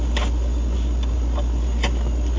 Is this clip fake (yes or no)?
no